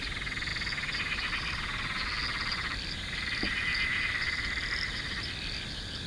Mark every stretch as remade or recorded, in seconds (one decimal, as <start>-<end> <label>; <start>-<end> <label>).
0.0-6.1 recorded